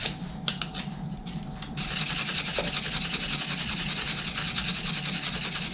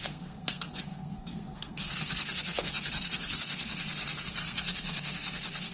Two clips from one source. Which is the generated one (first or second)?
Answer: second